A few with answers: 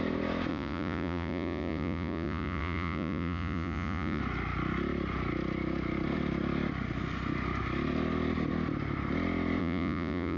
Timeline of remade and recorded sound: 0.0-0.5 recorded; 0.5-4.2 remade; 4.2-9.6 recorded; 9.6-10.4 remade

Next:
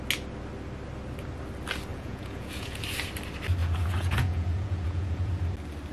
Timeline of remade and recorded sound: 0.0-1.9 recorded; 1.9-2.8 remade; 2.8-3.6 recorded; 3.6-5.3 remade; 5.3-5.9 recorded

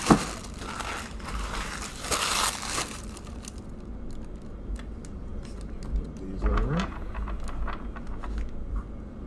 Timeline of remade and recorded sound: 0.0-6.5 recorded; 6.5-7.1 remade; 7.1-9.3 recorded

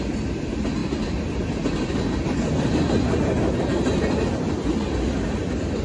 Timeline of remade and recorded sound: 0.0-5.8 recorded

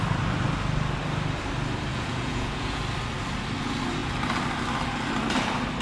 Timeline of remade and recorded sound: 0.0-1.9 recorded; 1.9-2.8 remade; 2.8-5.8 recorded

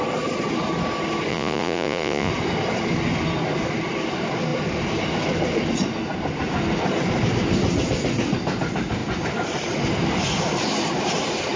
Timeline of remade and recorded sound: 0.0-1.3 recorded; 1.3-2.3 remade; 2.3-11.6 recorded